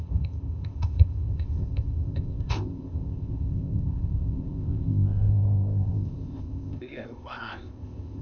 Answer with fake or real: fake